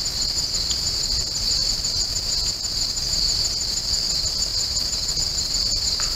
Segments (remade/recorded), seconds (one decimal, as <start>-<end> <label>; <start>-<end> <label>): 0.0-1.6 recorded; 1.6-2.1 remade; 2.1-6.2 recorded